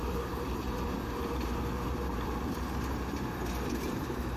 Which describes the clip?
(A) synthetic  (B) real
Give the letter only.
A